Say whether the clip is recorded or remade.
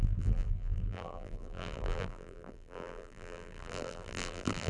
remade